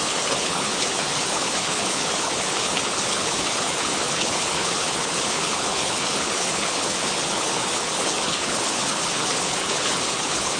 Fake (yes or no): yes